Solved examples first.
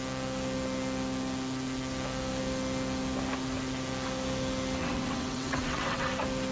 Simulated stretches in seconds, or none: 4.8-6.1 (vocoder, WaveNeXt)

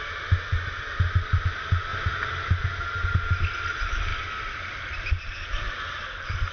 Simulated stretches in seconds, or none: none

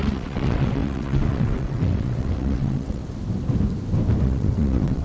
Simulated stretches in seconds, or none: 0.0-3.0 (vocoder, WaveNeXt); 4.2-5.0